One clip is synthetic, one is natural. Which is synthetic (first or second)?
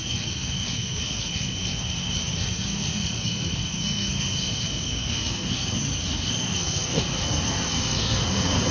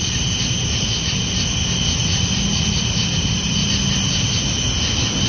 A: first